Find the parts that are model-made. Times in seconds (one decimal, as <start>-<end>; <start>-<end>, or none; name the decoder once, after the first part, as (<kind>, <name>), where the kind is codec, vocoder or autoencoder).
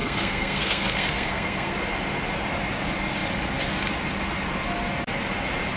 0.0-1.8 (codec, SNAC)